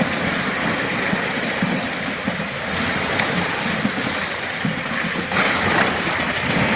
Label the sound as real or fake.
fake